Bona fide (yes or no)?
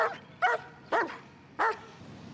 yes